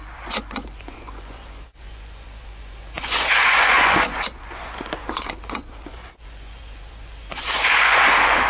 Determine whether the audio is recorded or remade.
remade